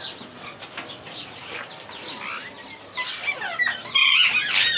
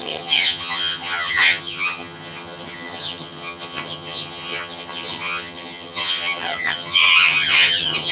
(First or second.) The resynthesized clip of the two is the second